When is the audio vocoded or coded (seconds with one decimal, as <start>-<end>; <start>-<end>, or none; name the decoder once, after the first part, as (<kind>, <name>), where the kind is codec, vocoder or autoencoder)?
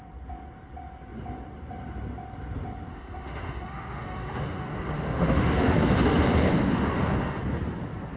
2.9-7.4 (autoencoder, DAC-VAE)